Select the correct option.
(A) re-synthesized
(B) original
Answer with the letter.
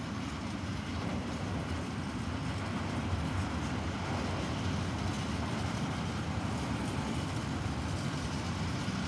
B